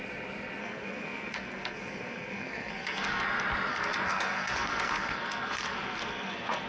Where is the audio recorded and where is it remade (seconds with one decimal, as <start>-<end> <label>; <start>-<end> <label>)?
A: 0.0-0.6 recorded; 0.6-3.2 remade; 3.2-3.7 recorded; 3.7-6.7 remade